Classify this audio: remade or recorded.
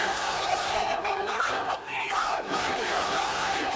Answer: remade